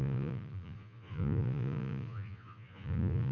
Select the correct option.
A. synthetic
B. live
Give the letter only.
A